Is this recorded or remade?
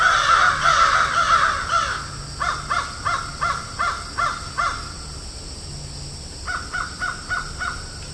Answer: recorded